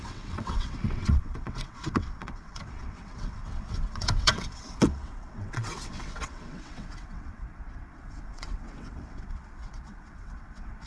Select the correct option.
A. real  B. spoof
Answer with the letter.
B